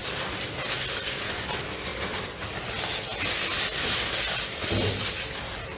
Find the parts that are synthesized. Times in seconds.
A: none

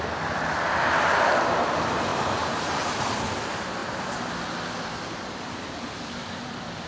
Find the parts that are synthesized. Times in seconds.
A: 2.1-3.1 (vocoder, BigVGAN v2); 3.8-4.3

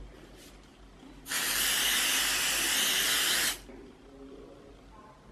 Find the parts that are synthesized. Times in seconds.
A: none

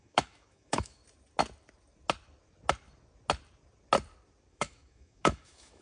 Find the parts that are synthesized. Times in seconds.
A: 0.0-1.0 (autoencoder, DAC-VAE); 4.5-5.8

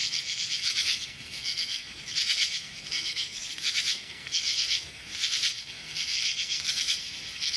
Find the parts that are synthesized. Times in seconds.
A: 0.0-7.6 (codec, SNAC)

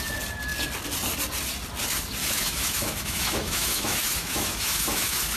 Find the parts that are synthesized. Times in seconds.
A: 2.2-5.4 (autoencoder, DAC-VAE)

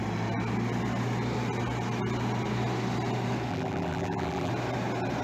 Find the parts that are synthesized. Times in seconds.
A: 3.5-4.5 (vocoder, BigVGAN v2)

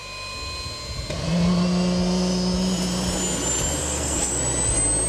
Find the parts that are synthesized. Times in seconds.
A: 3.8-4.4 (codec, SNAC)